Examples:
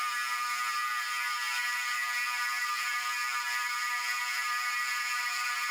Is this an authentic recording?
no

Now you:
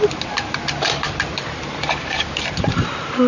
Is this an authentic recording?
no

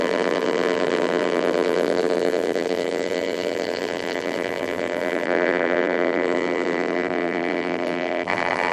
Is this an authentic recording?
no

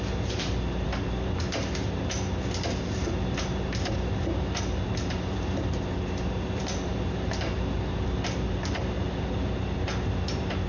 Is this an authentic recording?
no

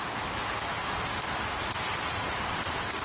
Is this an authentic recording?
yes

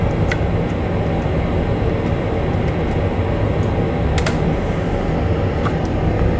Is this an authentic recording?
yes